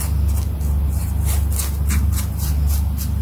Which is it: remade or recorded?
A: recorded